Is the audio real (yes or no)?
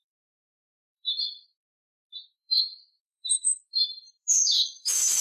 no